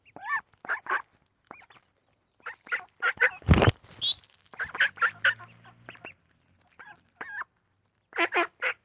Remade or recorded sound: recorded